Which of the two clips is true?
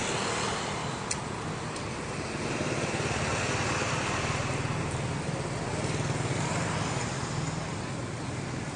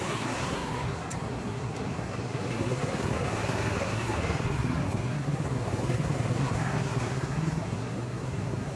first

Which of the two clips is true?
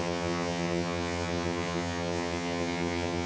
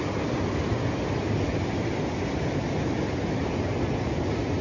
second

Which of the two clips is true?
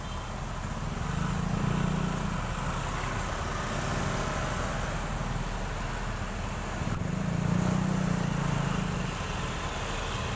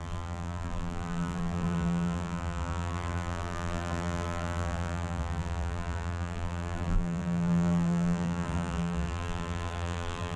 first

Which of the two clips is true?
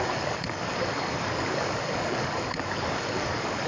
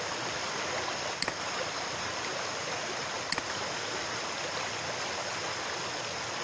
second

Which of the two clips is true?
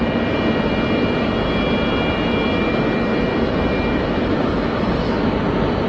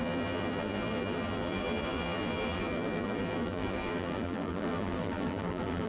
first